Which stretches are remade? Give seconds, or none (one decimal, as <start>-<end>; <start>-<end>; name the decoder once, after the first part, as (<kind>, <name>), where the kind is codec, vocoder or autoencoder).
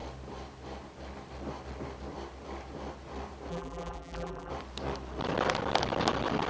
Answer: 3.5-4.5 (vocoder, BigVGAN v2)